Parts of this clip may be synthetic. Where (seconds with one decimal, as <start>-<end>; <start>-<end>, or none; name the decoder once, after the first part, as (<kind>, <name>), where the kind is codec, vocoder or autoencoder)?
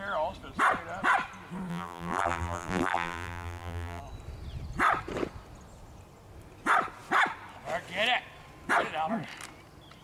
1.7-4.0 (vocoder, BigVGAN v2)